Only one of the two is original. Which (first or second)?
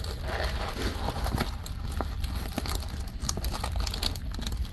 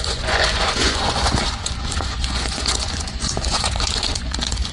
first